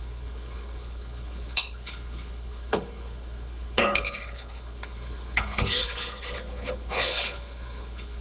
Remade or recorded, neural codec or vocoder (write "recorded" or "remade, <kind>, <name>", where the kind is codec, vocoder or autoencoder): remade, codec, HILCodec